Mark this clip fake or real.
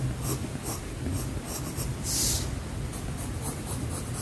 real